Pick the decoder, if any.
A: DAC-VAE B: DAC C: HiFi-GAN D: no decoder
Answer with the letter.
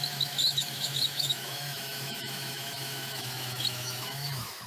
A